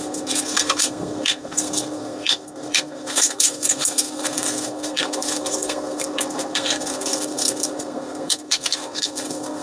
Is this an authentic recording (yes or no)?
no